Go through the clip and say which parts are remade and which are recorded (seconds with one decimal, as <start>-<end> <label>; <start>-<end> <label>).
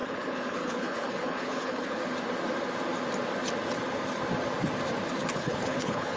0.0-2.0 remade; 2.0-5.2 recorded; 5.2-6.2 remade